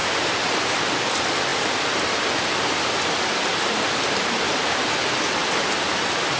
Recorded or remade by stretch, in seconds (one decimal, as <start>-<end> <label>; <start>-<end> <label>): 0.0-6.4 recorded